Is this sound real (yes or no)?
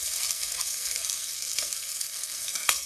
no